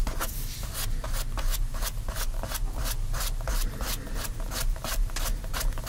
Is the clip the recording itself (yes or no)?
yes